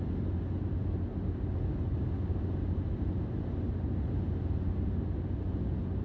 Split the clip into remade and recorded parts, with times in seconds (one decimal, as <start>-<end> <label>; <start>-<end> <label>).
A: 0.0-6.0 recorded